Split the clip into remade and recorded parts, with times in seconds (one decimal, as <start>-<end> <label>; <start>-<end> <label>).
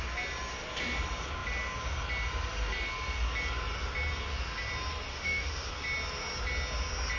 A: 0.0-5.1 recorded; 5.1-5.7 remade; 5.7-7.2 recorded